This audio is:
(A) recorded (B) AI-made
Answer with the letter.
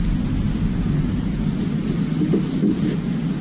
A